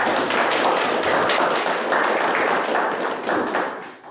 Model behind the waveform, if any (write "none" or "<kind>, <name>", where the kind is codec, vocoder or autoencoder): none